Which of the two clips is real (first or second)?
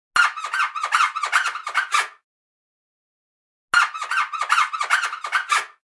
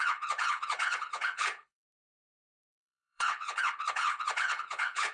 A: first